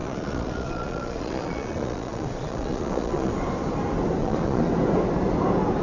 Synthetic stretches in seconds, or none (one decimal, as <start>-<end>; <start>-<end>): 0.0-3.3; 4.2-4.7